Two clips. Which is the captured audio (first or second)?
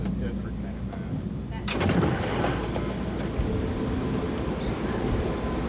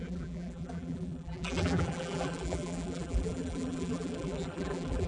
first